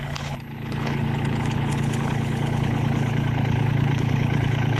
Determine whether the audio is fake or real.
fake